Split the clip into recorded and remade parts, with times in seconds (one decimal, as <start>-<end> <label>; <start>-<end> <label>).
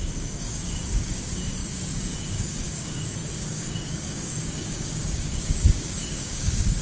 0.0-6.8 remade